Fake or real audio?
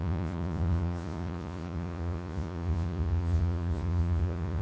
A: fake